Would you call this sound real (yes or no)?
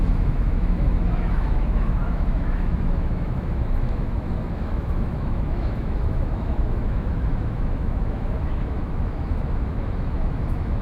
no